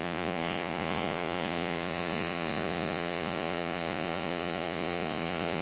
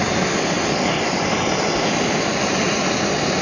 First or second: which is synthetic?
first